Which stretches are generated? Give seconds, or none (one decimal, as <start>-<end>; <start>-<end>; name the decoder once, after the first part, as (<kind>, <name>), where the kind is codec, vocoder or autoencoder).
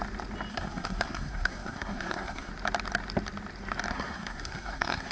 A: 0.5-2.5 (codec, SNAC); 3.9-5.1